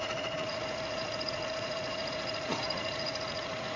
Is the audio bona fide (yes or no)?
no